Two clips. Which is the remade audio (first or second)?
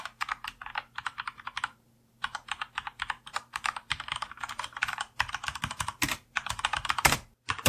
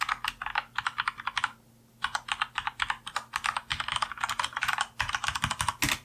first